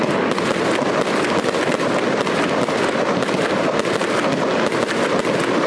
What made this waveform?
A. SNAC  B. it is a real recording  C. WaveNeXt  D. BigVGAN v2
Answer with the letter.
B